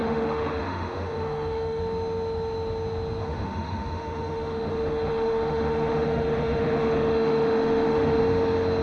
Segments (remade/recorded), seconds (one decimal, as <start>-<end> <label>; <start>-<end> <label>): 0.0-1.8 remade; 1.8-3.2 recorded; 3.2-8.2 remade; 8.2-8.8 recorded